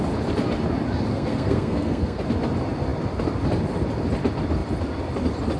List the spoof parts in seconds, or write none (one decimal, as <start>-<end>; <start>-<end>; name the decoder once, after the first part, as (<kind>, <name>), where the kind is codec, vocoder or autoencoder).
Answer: 1.1-2.2 (codec, SNAC)